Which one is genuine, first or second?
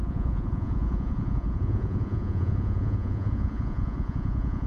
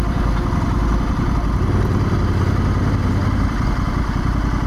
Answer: second